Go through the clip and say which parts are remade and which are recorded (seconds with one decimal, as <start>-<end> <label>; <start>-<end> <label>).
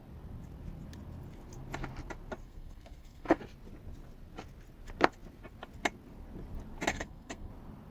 0.0-2.4 recorded; 2.4-3.4 remade; 3.4-6.9 recorded; 6.9-7.5 remade; 7.5-7.9 recorded